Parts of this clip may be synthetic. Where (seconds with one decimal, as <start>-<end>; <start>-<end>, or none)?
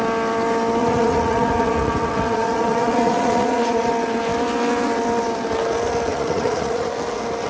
0.8-3.9; 6.1-6.9